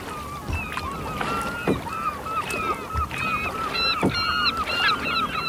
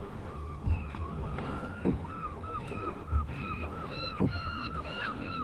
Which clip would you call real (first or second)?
first